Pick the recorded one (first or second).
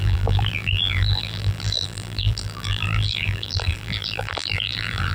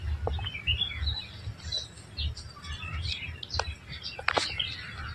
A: second